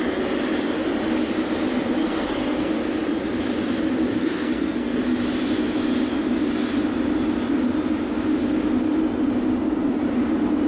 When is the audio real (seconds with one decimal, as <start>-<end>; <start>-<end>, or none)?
0.0-2.0; 2.7-4.1; 5.0-10.7